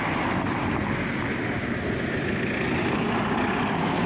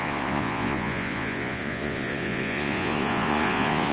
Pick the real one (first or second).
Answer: first